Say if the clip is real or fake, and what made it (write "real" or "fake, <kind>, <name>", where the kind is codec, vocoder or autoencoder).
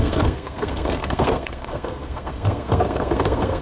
fake, codec, SNAC